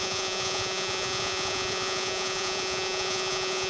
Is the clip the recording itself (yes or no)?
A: no